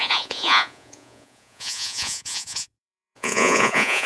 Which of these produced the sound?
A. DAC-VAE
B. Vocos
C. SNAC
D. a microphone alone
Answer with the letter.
B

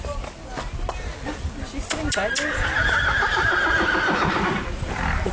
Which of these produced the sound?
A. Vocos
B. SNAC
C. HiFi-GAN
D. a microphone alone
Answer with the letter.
D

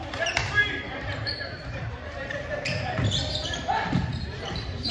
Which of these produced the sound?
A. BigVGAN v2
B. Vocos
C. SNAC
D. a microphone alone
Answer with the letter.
A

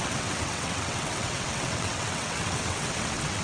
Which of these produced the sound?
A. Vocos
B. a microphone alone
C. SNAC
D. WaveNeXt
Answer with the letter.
D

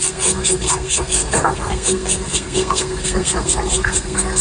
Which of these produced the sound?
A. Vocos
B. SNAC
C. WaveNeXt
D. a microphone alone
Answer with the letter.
B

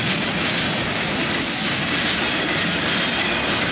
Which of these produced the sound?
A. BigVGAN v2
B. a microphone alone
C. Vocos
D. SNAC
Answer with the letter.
B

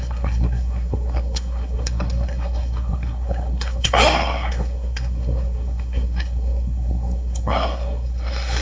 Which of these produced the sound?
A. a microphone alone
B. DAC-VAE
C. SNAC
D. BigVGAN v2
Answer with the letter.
C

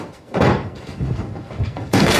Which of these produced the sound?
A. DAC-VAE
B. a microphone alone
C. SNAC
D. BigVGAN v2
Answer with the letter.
C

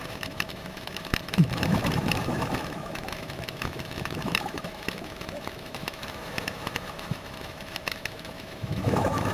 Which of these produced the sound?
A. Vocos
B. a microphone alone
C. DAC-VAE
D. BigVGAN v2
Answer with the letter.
C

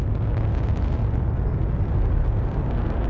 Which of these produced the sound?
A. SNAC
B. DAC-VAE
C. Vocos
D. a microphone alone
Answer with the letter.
D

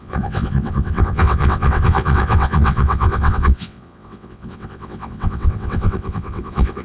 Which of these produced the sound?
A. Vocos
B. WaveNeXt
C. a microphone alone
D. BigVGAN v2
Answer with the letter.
B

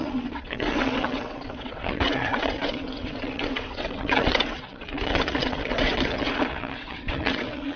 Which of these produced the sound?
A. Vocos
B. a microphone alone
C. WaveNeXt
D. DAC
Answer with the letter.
C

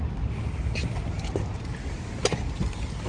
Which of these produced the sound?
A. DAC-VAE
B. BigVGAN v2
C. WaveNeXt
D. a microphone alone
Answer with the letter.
D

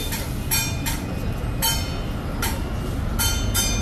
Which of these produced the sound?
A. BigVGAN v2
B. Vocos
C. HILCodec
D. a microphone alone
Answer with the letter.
D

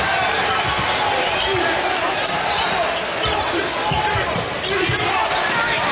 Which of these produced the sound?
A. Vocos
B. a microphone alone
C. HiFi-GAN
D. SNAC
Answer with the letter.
B